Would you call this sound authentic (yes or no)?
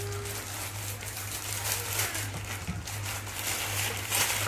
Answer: yes